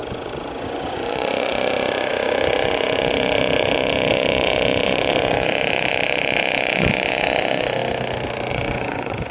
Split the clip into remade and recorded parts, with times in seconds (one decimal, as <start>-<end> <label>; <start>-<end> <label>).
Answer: 0.0-7.8 remade; 7.8-8.5 recorded; 8.5-9.3 remade